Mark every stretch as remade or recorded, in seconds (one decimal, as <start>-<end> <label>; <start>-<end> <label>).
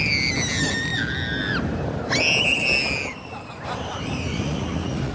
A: 0.0-4.3 recorded; 4.3-5.1 remade